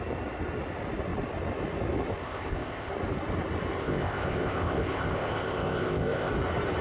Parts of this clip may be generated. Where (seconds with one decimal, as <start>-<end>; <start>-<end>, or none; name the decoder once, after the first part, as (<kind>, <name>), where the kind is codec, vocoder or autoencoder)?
2.2-2.9 (codec, ZipCodec); 3.8-6.3